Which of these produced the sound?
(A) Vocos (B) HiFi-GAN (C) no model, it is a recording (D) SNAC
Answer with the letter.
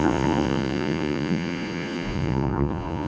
A